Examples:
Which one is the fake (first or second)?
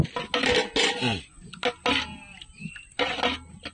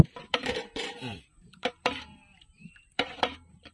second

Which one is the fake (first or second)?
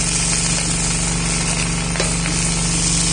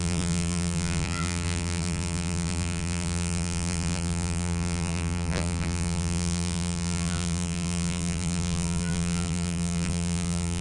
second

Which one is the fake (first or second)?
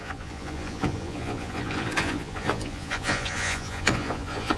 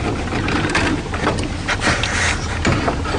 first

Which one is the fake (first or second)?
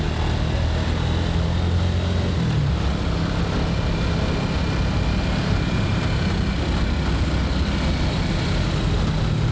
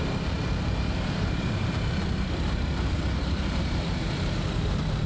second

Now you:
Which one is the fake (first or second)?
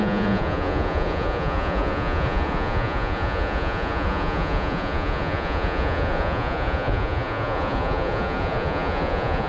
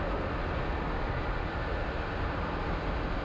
first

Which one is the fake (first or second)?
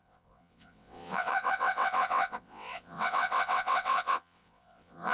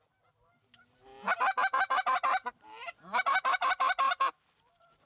first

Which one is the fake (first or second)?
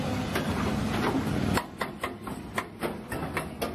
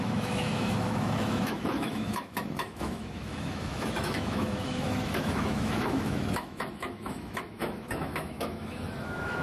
second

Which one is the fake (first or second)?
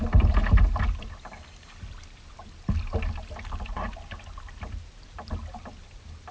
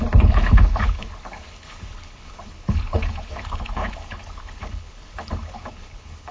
second